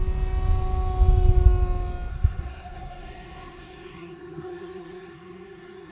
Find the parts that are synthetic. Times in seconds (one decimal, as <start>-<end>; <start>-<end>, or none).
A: 2.1-5.9